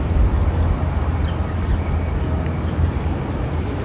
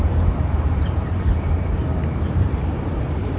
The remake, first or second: second